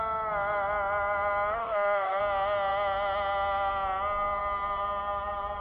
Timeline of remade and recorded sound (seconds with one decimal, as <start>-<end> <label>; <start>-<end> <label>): 0.0-1.6 recorded; 1.6-2.2 remade; 2.2-5.6 recorded

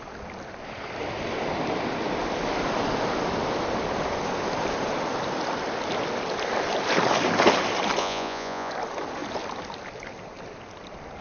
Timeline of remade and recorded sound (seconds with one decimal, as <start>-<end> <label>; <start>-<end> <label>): 0.0-8.0 recorded; 8.0-8.7 remade; 8.7-11.2 recorded